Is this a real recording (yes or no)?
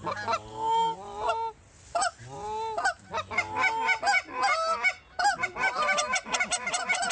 yes